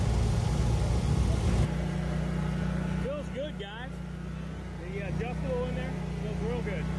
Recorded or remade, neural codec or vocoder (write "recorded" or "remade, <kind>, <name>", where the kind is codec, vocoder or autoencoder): recorded